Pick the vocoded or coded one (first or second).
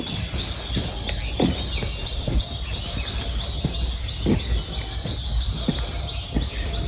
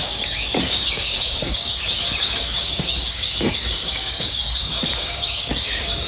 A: second